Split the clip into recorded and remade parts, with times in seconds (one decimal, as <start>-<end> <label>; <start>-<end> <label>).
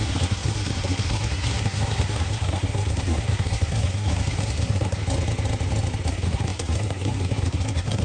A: 0.0-5.0 remade; 5.0-6.1 recorded; 6.1-8.0 remade